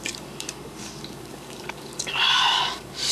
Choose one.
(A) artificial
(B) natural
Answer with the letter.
A